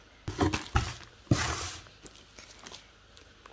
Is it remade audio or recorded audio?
recorded